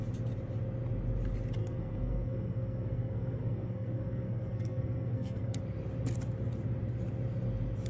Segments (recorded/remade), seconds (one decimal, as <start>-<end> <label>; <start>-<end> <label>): 0.0-1.6 recorded; 1.6-5.6 remade; 5.6-7.9 recorded

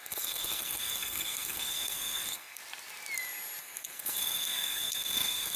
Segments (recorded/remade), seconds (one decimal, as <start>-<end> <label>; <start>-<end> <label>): 0.0-2.6 remade; 2.6-3.6 recorded; 3.6-5.6 remade

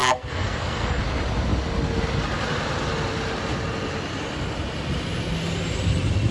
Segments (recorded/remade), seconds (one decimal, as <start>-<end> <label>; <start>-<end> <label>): 0.0-1.0 remade; 1.0-6.3 recorded

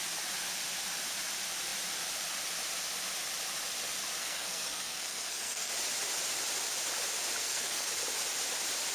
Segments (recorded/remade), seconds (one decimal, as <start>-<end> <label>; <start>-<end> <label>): 0.0-4.2 recorded; 4.2-5.7 remade; 5.7-7.4 recorded; 7.4-7.9 remade; 7.9-8.9 recorded

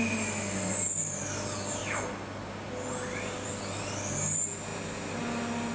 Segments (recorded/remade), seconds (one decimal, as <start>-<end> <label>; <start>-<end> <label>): 0.0-5.7 recorded

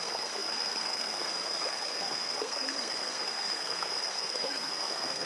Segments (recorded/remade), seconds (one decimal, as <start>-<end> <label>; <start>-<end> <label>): 0.0-5.3 remade

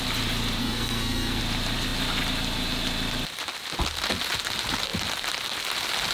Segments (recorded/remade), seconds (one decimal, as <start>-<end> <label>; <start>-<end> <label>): 0.0-0.6 recorded; 0.6-1.4 remade; 1.4-6.1 recorded